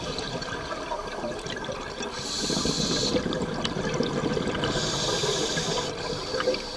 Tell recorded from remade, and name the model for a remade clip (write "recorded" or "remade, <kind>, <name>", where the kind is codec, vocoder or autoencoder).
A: recorded